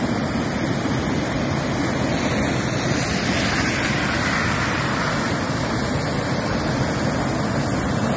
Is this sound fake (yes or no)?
no